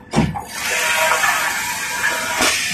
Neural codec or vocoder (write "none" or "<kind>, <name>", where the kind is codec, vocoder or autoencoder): none